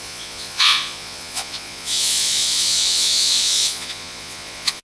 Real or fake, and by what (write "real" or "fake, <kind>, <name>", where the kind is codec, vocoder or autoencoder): fake, vocoder, Vocos